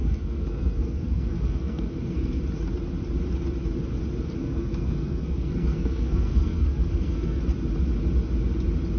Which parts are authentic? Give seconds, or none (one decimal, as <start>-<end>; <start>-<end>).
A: 2.4-4.4; 7.4-9.0